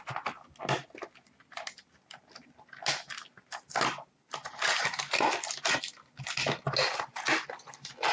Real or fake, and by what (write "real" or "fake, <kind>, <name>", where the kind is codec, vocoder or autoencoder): real